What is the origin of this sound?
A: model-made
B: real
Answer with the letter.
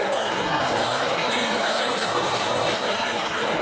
A